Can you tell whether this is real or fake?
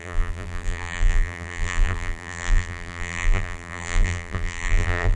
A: fake